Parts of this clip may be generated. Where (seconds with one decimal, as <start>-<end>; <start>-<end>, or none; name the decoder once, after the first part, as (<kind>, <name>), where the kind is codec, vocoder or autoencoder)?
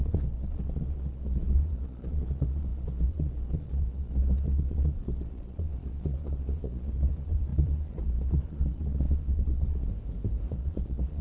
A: 0.0-9.9 (vocoder, Vocos); 10.5-11.2